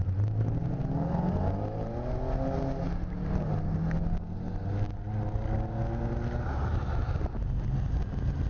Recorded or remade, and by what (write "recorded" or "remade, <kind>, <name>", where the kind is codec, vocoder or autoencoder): recorded